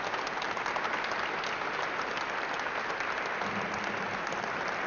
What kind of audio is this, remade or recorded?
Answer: recorded